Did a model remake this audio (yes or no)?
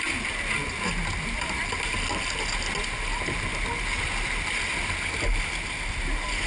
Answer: no